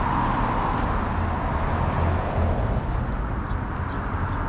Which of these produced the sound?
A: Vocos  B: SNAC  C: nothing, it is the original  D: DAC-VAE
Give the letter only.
C